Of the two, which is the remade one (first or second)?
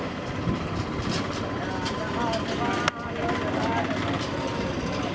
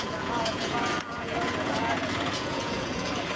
second